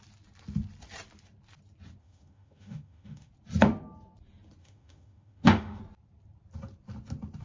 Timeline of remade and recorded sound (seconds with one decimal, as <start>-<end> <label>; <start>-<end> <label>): 0.0-2.0 recorded; 2.0-3.3 remade; 3.3-4.6 recorded; 4.6-5.8 remade; 5.8-7.4 recorded